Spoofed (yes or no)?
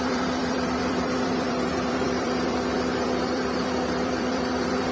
yes